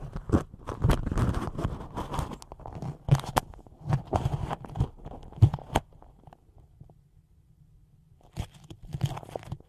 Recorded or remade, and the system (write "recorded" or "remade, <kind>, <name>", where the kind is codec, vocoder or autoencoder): recorded